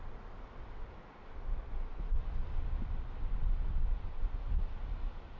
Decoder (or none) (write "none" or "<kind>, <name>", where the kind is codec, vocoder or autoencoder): none